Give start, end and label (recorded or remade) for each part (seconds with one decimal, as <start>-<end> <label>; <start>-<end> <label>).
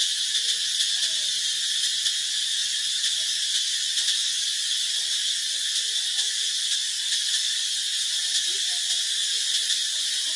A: 0.0-2.6 recorded; 2.6-3.5 remade; 3.5-10.4 recorded